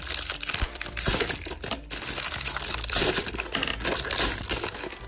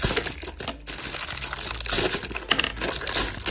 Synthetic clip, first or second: first